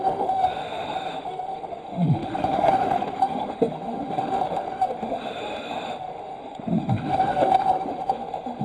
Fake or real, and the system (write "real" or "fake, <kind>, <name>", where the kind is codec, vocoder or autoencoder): fake, autoencoder, DAC-VAE